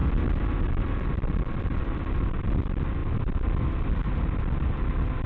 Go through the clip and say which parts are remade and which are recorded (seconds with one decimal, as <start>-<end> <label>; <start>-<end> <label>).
0.0-5.3 recorded